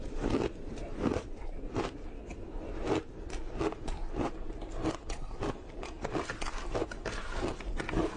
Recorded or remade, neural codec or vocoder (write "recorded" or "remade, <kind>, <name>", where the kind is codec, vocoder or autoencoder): recorded